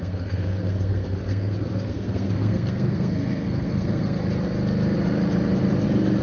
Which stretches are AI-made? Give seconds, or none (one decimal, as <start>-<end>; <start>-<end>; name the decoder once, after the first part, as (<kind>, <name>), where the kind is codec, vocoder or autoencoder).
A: 0.0-4.2 (codec, SNAC)